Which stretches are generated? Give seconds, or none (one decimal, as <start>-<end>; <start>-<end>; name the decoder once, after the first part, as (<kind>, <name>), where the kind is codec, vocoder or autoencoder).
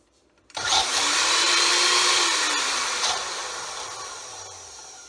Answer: 0.0-1.7 (vocoder, BigVGAN v2); 2.6-3.4; 4.0-5.1